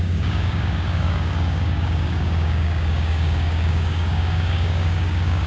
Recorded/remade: remade